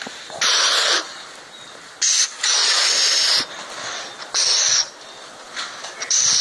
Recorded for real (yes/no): yes